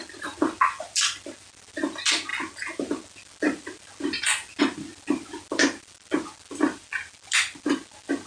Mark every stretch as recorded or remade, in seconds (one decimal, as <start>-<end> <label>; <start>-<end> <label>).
0.0-8.3 recorded